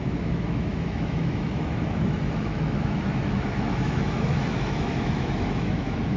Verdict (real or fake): fake